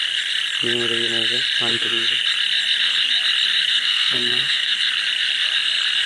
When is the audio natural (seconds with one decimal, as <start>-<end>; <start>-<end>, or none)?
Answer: 0.0-1.7; 2.2-3.7; 4.9-6.1